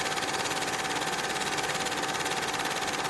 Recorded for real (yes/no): yes